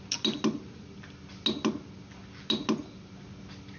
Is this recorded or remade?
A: recorded